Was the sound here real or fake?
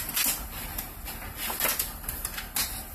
real